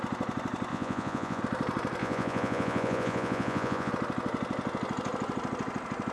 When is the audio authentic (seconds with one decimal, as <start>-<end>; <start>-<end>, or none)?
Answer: 0.0-0.7; 1.4-2.0; 3.9-6.1

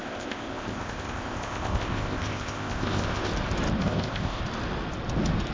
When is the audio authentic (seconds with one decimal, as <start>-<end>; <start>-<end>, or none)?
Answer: 3.3-3.8; 4.4-5.5

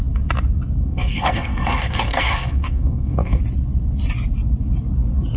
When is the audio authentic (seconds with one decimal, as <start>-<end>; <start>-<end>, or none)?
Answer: 0.0-0.8; 3.4-5.4

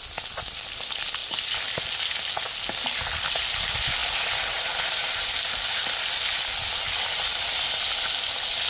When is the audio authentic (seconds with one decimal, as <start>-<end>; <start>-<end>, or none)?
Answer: 0.0-8.7

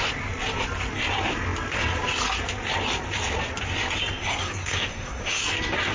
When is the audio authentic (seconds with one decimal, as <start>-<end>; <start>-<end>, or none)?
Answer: 0.0-4.2; 5.4-5.9

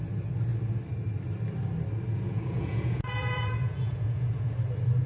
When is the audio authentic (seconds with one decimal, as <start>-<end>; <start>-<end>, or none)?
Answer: 0.0-2.1; 4.5-5.1

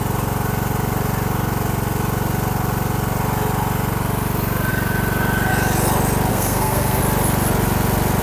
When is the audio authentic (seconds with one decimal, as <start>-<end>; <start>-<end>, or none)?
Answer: 0.0-6.3; 7.0-8.2